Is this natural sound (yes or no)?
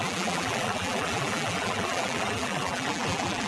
no